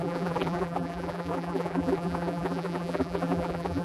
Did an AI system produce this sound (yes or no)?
yes